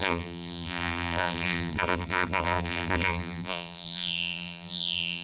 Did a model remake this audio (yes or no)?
yes